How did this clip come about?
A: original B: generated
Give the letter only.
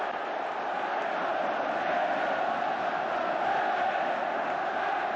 A